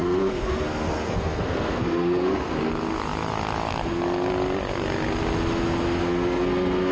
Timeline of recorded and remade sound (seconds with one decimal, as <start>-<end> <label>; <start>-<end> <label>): 0.0-2.7 remade; 2.7-6.0 recorded; 6.0-6.9 remade